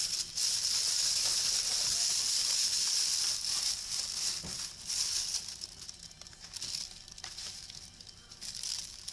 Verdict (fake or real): real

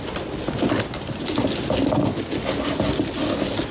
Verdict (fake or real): real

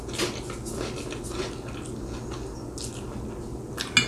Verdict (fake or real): real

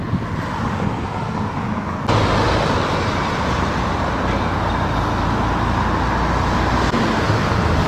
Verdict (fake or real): real